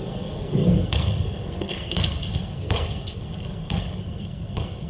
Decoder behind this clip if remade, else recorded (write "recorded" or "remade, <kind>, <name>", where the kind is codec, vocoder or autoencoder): remade, codec, SNAC